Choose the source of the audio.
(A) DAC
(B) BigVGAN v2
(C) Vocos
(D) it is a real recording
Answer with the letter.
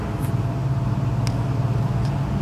D